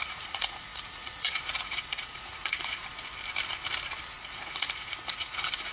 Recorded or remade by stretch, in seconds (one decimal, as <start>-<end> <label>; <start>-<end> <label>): 0.0-2.8 remade; 2.8-4.2 recorded; 4.2-5.7 remade